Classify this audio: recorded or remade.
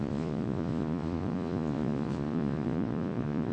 remade